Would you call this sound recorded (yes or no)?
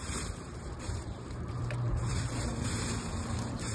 no